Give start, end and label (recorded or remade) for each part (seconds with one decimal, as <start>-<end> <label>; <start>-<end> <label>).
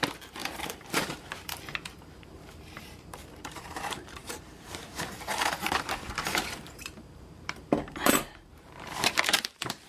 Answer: 0.0-9.9 remade